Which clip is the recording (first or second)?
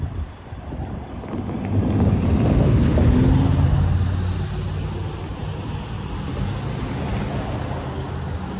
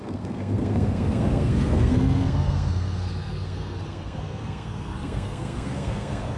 first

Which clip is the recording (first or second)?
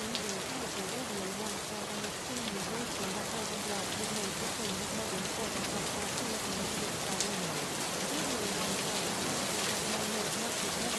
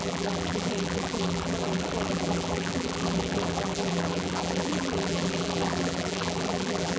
first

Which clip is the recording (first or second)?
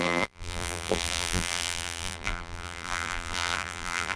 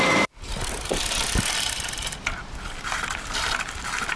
second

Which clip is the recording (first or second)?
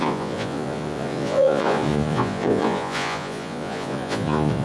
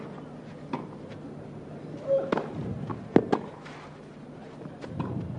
second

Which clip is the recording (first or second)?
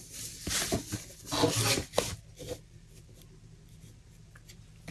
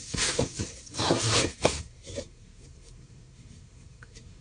first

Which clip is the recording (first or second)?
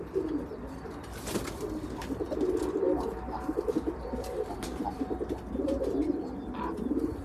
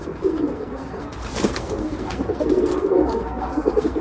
first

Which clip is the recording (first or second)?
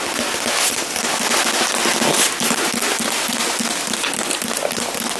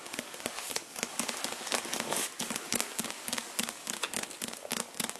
first